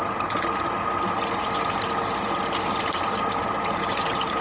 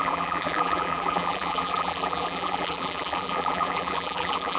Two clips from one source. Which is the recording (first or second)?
first